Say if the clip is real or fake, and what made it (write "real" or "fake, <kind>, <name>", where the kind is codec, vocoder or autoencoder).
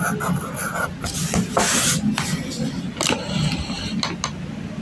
real